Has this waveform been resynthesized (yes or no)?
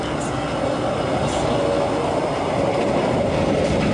no